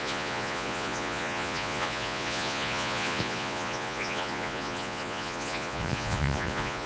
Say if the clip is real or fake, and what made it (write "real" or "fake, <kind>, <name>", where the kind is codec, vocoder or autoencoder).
fake, vocoder, Vocos